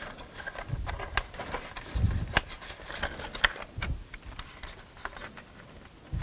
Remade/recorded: recorded